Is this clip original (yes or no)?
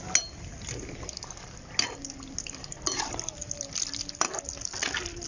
yes